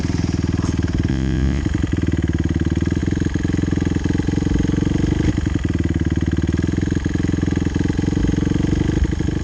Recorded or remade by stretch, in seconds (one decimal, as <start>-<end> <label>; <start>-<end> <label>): 0.0-1.1 recorded; 1.1-1.6 remade; 1.6-9.4 recorded